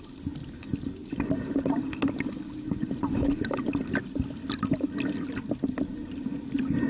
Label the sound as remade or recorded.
recorded